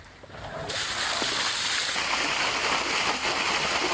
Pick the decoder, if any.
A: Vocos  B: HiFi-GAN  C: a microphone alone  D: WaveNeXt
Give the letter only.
C